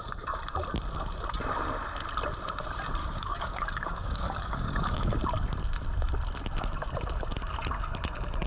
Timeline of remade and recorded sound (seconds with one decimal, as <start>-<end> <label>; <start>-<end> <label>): 0.0-3.0 recorded; 3.0-5.2 remade; 5.2-8.5 recorded

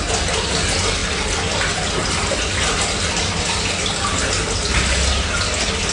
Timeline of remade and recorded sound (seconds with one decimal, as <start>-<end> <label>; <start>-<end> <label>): 0.0-5.9 recorded

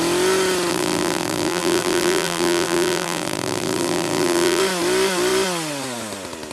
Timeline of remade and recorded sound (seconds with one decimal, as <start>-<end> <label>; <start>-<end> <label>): 0.0-0.7 recorded; 0.7-4.6 remade; 4.6-6.5 recorded

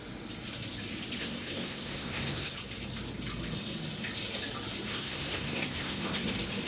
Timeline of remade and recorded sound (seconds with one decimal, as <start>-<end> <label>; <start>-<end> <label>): 0.0-1.2 recorded; 1.2-2.5 remade; 2.5-4.9 recorded; 4.9-6.3 remade; 6.3-6.7 recorded

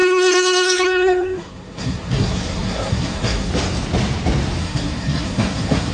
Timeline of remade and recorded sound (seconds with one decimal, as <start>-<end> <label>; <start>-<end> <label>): 0.0-3.5 remade; 3.5-4.6 recorded; 4.6-5.9 remade

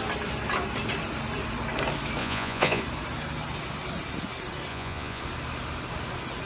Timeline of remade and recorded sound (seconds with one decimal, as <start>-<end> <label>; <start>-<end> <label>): 0.0-2.2 recorded; 2.2-2.8 remade; 2.8-4.7 recorded; 4.7-5.2 remade; 5.2-6.5 recorded